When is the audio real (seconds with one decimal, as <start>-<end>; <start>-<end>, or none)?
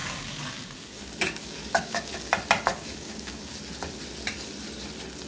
2.3-2.7; 3.6-5.3